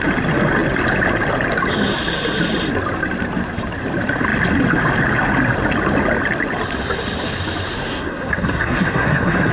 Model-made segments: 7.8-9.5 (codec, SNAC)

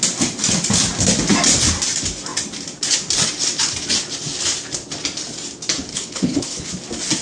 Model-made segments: 5.9-6.7 (codec, HILCodec)

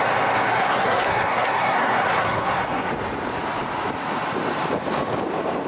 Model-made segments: 0.5-2.9 (codec, SNAC)

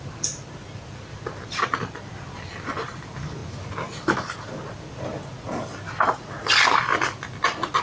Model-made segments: none